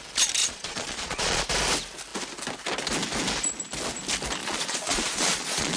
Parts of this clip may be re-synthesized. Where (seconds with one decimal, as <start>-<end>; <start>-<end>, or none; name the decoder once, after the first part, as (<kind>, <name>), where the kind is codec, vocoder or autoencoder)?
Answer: 0.4-1.4 (vocoder, Vocos); 4.4-5.8